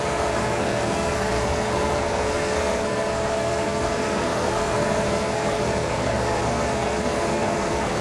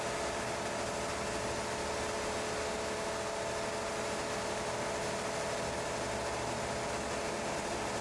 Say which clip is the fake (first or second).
first